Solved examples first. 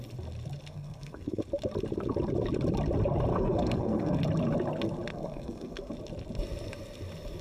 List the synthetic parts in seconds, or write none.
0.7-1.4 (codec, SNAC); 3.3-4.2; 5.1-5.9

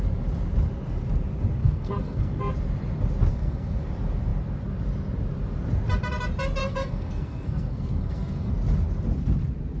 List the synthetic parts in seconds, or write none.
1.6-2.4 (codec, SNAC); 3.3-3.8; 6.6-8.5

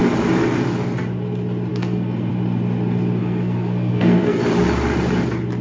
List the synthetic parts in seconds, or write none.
1.7-2.3 (codec, SNAC); 3.2-4.4

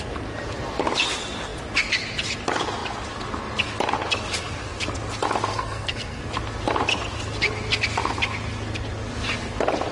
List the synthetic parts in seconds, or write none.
5.5-6.2 (codec, SNAC)

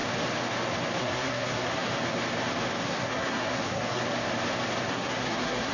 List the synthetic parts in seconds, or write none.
1.0-1.9 (codec, SNAC); 2.8-4.0; 4.9-5.7

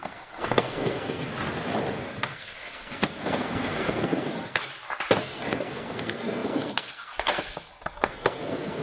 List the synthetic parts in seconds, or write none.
0.0-1.3 (codec, SNAC); 1.9-4.7; 5.2-8.8

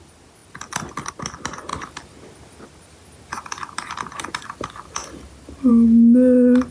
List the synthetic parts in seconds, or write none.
none